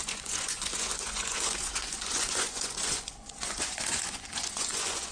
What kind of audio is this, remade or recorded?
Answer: remade